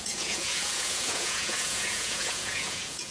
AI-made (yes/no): yes